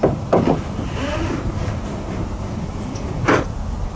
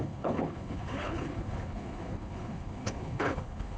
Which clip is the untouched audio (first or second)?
first